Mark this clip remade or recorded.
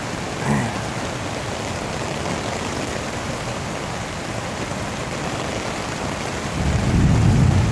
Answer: recorded